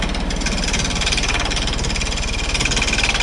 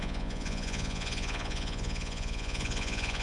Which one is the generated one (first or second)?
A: second